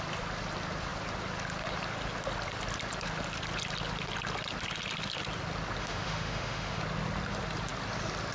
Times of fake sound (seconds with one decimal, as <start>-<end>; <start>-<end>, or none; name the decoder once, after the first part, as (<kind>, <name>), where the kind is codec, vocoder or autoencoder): 5.8-6.8 (autoencoder, DAC-VAE)